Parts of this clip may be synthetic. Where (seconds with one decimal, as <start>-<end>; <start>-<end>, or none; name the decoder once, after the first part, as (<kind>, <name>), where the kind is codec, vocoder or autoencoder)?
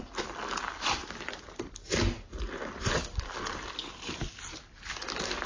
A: none